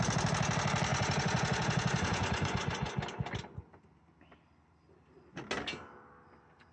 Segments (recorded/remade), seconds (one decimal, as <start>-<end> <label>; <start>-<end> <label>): 0.0-0.9 recorded; 0.9-2.9 remade; 2.9-6.7 recorded